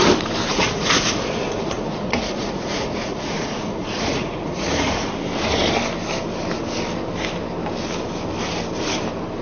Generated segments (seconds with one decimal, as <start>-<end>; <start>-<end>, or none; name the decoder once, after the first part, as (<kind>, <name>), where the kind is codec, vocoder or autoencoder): 0.5-5.1 (vocoder, Vocos)